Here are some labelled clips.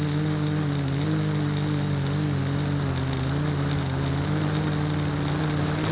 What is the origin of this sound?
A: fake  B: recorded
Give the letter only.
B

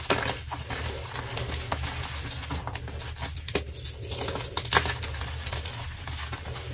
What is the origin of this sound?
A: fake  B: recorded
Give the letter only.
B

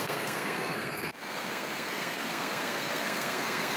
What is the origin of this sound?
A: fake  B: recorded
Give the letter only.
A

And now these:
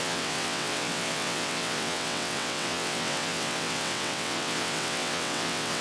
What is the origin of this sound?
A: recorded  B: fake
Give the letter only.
B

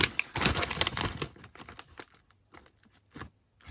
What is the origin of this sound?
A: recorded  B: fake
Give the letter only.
A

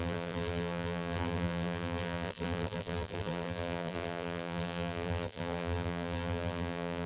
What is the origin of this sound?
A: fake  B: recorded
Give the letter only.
A